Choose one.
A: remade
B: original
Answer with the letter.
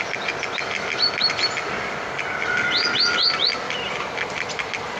B